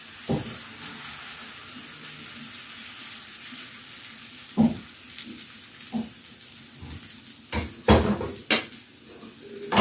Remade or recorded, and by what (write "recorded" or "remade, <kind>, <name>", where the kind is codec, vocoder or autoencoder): recorded